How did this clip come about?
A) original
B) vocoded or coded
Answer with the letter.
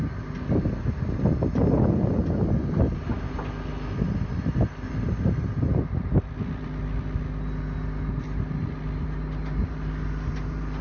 A